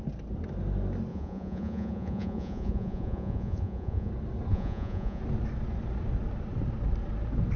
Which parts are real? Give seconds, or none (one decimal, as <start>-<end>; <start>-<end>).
0.0-1.1; 4.1-4.5; 5.2-7.6